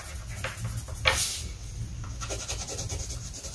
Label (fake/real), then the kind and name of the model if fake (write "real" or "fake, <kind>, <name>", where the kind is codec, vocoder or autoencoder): real